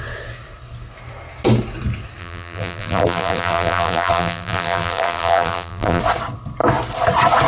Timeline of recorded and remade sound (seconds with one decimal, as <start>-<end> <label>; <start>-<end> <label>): 0.0-2.2 recorded; 2.2-6.0 remade; 6.0-7.5 recorded